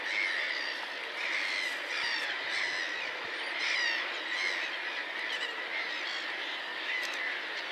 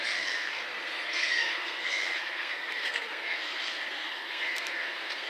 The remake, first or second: second